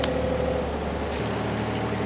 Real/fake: real